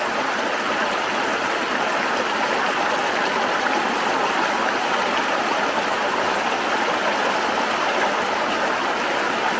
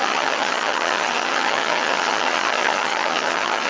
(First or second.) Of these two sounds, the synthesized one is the second